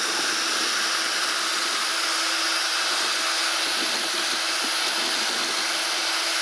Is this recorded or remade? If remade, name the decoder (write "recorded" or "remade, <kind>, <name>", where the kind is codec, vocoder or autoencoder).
recorded